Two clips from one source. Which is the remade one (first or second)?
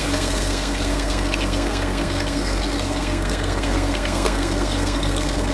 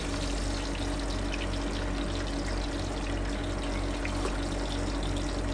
first